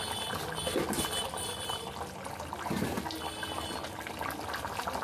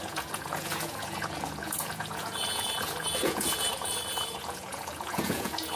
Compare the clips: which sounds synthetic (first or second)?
second